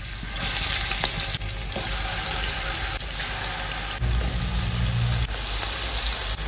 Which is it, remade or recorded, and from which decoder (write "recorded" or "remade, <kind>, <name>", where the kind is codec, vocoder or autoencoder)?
recorded